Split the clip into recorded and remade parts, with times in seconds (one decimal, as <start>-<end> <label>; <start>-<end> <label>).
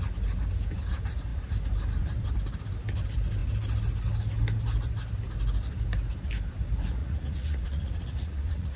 0.0-7.0 recorded; 7.0-8.8 remade